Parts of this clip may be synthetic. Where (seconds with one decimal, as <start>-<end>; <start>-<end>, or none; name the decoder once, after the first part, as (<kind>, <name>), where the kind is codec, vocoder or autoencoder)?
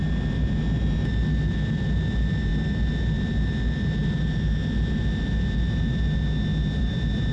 none